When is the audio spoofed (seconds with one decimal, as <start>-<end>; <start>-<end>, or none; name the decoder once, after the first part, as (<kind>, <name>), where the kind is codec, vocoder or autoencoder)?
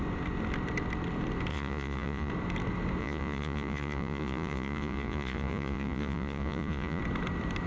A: 1.5-2.3 (vocoder, Vocos); 3.0-7.0